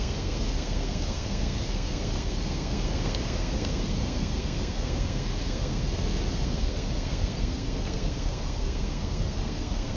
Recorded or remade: remade